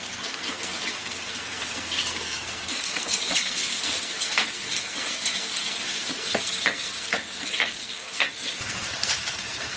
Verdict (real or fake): fake